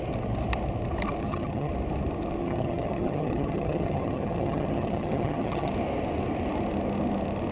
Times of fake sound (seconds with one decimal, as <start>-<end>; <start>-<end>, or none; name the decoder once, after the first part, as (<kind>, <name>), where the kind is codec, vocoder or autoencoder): 1.2-1.7 (vocoder, HiFi-GAN); 2.4-5.7